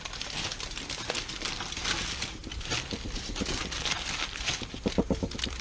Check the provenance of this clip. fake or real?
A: real